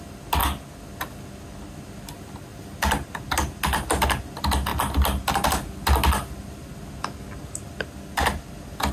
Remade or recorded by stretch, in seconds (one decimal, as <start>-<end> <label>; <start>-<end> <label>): 0.0-8.9 recorded